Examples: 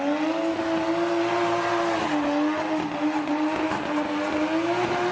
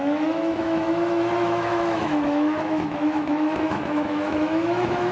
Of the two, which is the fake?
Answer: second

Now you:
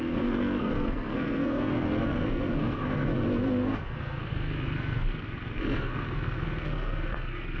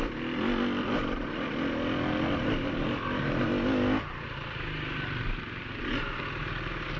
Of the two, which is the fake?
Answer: first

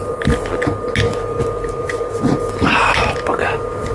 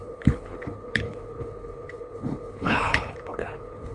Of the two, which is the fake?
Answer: second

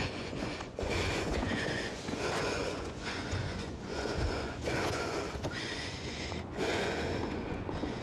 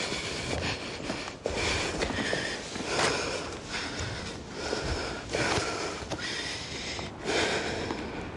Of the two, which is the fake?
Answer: first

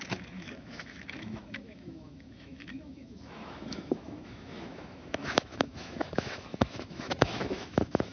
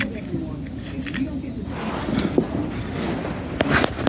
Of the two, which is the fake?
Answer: first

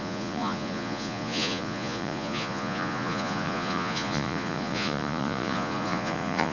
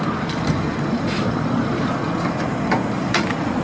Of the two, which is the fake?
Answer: first